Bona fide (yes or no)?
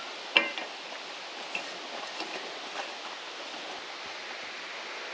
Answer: yes